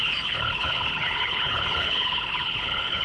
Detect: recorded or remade remade